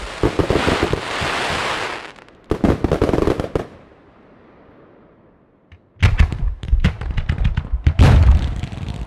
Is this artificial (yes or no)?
no